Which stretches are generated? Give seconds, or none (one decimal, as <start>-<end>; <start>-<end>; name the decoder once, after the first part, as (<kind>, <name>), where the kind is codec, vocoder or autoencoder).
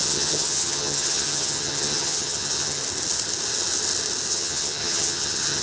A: 0.0-2.8 (vocoder, HiFi-GAN); 4.3-5.6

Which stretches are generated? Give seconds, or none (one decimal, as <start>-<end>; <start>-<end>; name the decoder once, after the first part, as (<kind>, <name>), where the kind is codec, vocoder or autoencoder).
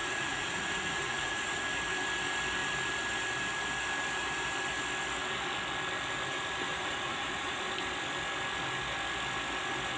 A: 0.0-1.6 (vocoder, Vocos); 6.7-7.6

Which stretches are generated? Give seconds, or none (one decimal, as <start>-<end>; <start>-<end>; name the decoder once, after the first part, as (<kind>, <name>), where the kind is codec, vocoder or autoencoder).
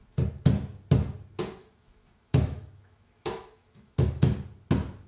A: 1.6-4.3 (autoencoder, DAC-VAE)